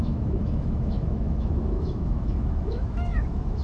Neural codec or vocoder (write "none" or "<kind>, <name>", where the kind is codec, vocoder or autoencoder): autoencoder, DAC-VAE